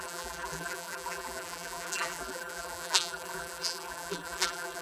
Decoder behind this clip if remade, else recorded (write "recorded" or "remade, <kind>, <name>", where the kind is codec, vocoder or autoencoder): remade, vocoder, BigVGAN v2